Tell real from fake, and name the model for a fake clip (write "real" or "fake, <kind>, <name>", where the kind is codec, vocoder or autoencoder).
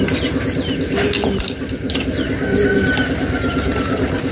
real